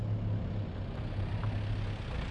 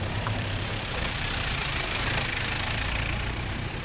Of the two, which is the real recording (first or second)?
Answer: first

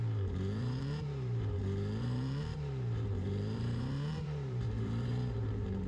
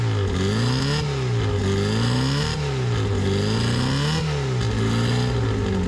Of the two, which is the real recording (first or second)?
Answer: second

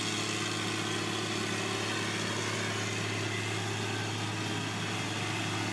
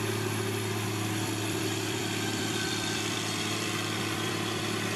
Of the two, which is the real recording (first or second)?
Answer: first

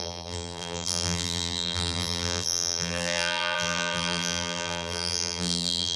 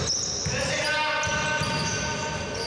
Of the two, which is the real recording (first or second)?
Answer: second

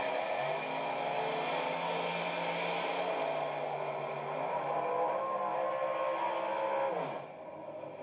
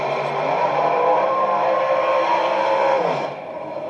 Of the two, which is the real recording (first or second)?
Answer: first